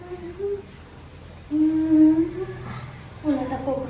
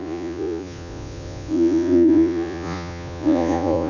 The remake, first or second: second